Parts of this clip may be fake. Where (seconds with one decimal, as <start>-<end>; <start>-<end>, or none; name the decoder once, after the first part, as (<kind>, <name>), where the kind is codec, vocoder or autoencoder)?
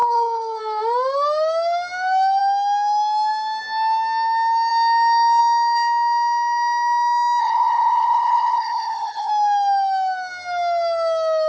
0.0-0.6 (codec, HILCodec); 7.4-9.3